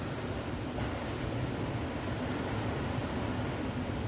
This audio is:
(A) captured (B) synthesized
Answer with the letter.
A